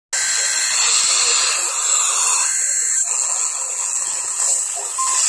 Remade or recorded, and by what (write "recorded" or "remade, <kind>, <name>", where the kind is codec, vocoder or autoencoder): recorded